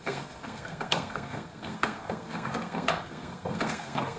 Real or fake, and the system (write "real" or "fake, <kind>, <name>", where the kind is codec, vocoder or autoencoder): fake, codec, SNAC